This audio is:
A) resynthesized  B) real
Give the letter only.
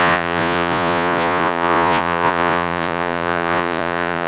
A